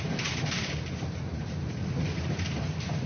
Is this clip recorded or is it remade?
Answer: recorded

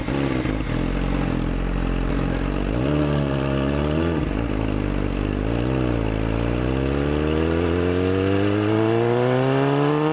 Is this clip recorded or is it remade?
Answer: recorded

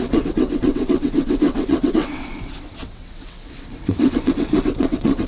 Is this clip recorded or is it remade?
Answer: remade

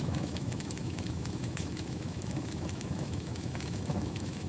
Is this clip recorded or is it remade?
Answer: remade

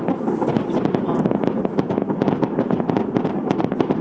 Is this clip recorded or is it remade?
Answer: recorded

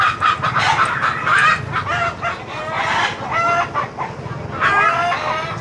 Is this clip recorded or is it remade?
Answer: recorded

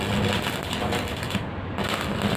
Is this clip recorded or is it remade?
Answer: recorded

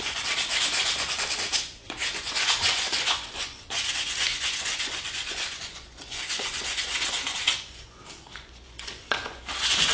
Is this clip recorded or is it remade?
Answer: remade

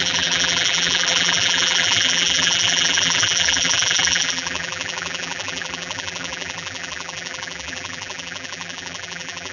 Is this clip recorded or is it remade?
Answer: remade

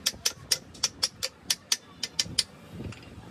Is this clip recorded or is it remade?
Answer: recorded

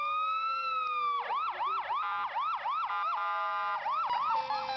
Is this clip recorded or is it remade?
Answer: recorded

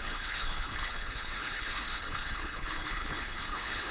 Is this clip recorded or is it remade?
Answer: remade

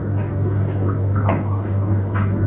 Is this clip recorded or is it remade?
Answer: remade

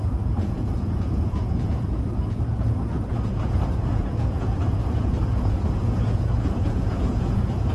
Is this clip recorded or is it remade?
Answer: remade